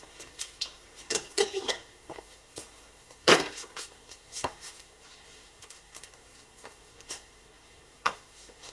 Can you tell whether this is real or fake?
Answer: fake